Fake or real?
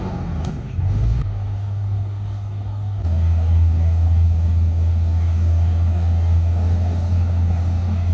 fake